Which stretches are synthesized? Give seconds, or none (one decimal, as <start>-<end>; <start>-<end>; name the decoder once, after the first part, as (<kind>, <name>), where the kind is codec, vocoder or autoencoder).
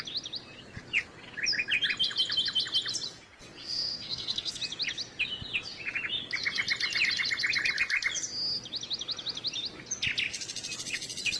3.6-4.6 (codec, SNAC)